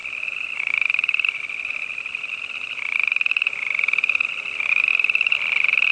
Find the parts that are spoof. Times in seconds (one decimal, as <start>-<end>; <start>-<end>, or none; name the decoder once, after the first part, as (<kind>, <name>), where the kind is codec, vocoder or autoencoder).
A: none